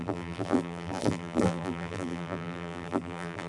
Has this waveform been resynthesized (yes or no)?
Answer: yes